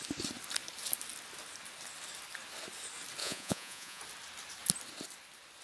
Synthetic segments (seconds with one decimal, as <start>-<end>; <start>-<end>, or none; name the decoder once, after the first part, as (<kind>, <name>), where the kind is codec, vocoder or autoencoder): 3.2-4.0 (vocoder, Vocos)